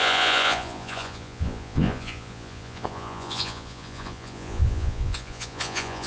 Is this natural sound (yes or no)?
no